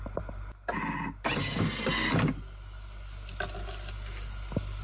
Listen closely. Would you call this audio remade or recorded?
recorded